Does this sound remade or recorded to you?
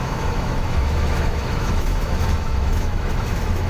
remade